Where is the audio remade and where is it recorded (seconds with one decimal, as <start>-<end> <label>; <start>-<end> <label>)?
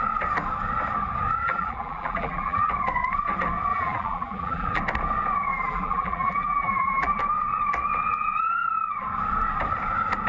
0.0-1.4 recorded; 1.4-2.7 remade; 2.7-3.7 recorded; 3.7-4.8 remade; 4.8-5.5 recorded; 5.5-7.2 remade; 7.2-10.3 recorded